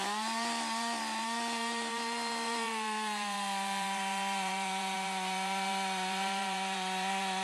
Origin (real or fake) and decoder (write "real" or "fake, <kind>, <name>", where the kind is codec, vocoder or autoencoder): fake, vocoder, BigVGAN v2